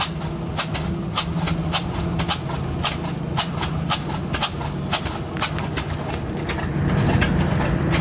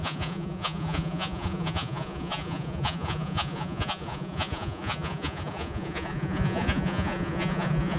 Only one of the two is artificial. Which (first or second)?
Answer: second